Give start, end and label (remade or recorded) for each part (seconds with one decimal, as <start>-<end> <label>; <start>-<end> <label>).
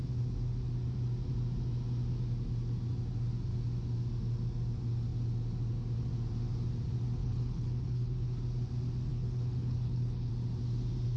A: 0.0-7.2 recorded; 7.2-8.4 remade; 8.4-9.1 recorded; 9.1-10.3 remade; 10.3-11.2 recorded